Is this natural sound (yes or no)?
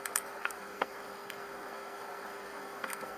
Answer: no